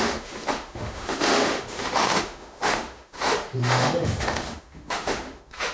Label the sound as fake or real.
fake